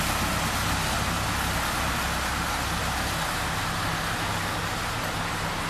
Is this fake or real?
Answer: real